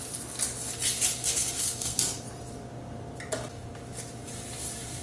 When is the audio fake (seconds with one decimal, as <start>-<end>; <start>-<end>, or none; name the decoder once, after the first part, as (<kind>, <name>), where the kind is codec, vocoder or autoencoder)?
1.2-2.2 (codec, SNAC)